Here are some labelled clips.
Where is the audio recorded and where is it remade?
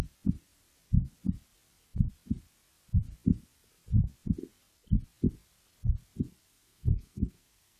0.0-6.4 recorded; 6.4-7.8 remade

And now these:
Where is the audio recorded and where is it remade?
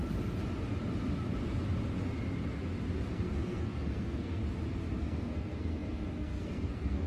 0.0-3.1 recorded; 3.1-4.4 remade; 4.4-5.0 recorded; 5.0-7.1 remade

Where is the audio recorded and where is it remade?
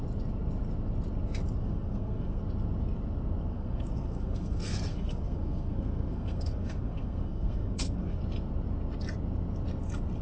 0.0-1.6 recorded; 1.6-2.4 remade; 2.4-3.5 recorded; 3.5-8.2 remade; 8.2-10.2 recorded